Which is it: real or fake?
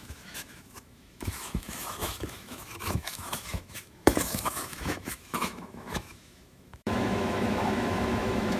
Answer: fake